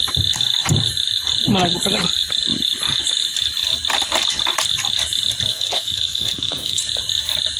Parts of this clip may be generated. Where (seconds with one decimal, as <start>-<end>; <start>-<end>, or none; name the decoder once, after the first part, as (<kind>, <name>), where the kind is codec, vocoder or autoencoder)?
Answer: 5.5-6.8 (codec, SNAC)